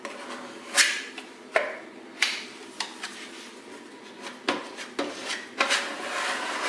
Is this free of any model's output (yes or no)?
no